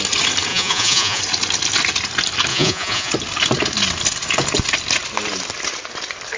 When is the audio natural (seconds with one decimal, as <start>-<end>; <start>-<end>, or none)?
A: 0.0-0.5; 1.2-2.5; 3.1-6.4